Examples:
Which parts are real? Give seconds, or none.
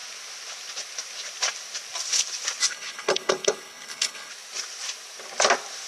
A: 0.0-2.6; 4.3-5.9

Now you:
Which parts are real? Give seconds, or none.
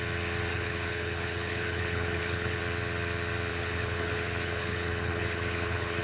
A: 0.0-0.5; 2.6-3.5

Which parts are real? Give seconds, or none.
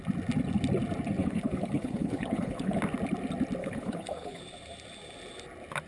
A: 0.0-1.2; 2.8-3.6; 4.4-5.9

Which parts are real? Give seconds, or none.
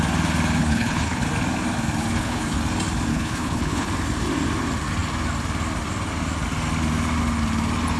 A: 0.0-0.6; 1.2-2.0; 2.6-3.1; 3.9-8.0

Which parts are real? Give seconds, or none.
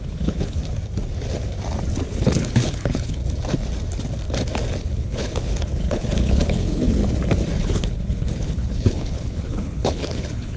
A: 0.6-2.1; 3.2-4.8; 7.0-7.6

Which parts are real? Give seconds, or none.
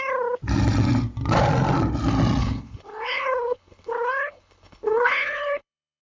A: 0.0-2.4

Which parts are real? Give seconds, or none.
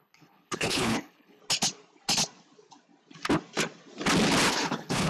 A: 1.4-4.5